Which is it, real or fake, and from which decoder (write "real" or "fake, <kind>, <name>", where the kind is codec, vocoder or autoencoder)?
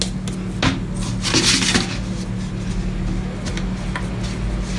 real